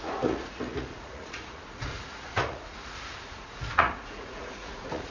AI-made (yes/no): yes